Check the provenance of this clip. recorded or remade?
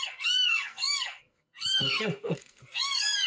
remade